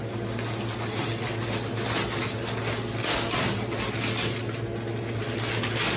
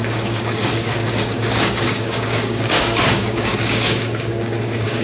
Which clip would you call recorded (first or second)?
first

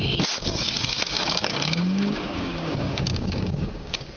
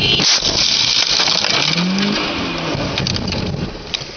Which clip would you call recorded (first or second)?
second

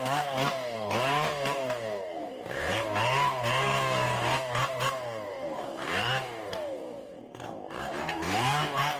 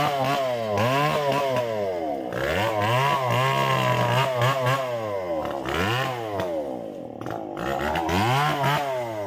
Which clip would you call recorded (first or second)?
second